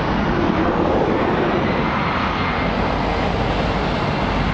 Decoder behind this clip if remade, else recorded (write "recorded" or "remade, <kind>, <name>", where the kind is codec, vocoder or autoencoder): recorded